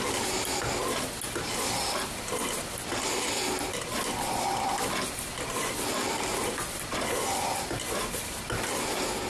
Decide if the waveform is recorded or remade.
recorded